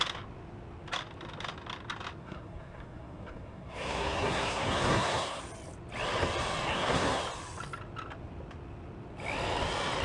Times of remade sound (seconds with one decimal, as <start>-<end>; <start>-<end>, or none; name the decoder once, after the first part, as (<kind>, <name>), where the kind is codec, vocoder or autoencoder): 2.2-5.4 (codec, SNAC); 6.7-7.2